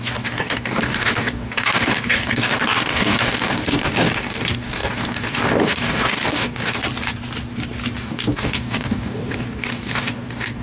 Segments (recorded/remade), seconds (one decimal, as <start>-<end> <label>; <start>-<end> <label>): 0.0-6.8 remade; 6.8-8.0 recorded; 8.0-10.6 remade